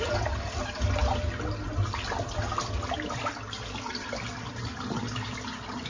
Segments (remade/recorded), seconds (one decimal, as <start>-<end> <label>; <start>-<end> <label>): 0.0-5.9 recorded

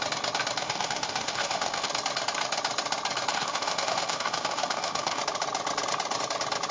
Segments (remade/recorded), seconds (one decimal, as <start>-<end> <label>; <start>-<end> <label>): 0.0-0.6 recorded; 0.6-1.9 remade; 1.9-3.3 recorded; 3.3-5.2 remade; 5.2-6.7 recorded